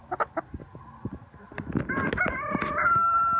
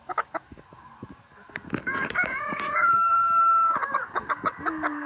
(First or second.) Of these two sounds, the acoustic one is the first